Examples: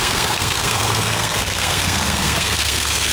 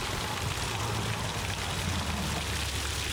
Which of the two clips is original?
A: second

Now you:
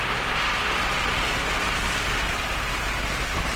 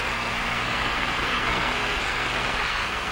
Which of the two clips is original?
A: first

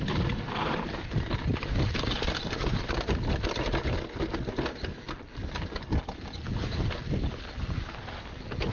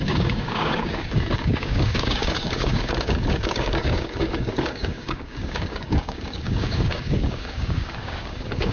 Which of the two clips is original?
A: first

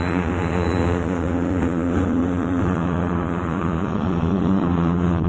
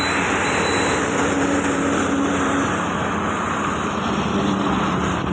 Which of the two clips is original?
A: second